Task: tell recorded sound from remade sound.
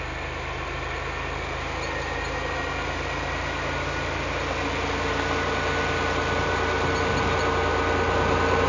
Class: recorded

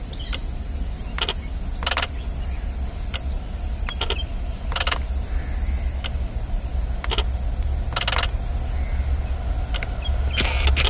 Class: recorded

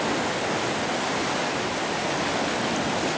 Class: recorded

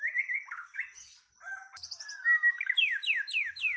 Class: recorded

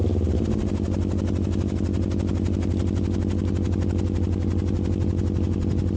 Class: recorded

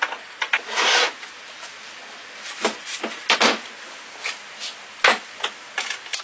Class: recorded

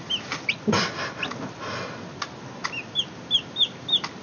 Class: recorded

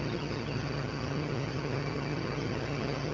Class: remade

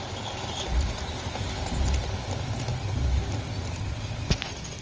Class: recorded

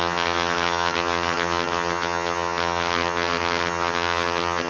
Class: remade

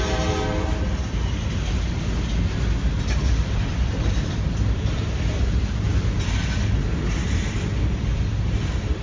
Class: recorded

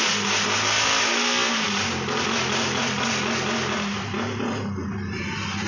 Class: recorded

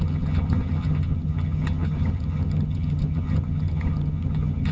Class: remade